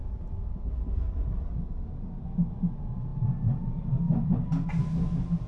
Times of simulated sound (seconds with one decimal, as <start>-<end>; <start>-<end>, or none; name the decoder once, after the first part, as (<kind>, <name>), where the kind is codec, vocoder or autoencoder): none